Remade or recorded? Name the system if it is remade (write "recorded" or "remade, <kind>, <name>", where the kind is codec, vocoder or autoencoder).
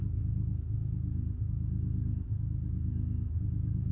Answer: recorded